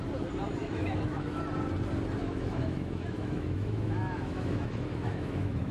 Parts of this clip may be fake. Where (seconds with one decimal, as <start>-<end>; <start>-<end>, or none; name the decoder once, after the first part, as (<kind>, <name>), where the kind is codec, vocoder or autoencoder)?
0.6-1.4 (autoencoder, DAC-VAE); 2.2-5.7